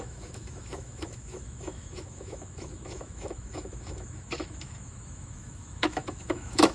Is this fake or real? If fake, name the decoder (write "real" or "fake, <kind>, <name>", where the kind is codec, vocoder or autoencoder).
fake, autoencoder, DAC-VAE